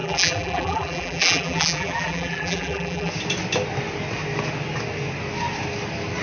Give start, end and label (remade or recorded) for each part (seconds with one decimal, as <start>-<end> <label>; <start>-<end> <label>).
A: 0.0-3.1 remade; 3.1-6.2 recorded